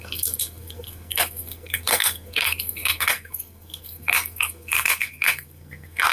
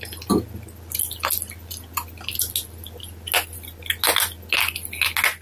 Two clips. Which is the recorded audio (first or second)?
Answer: second